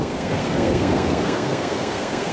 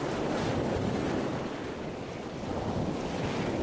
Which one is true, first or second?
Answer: second